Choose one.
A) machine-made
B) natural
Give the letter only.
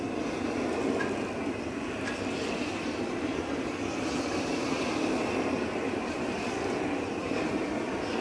B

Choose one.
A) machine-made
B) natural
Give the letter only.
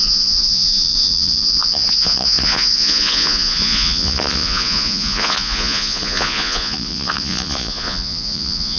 A